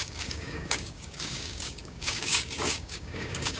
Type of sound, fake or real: fake